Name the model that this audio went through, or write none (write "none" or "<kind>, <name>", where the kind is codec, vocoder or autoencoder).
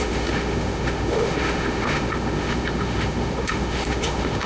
autoencoder, DAC-VAE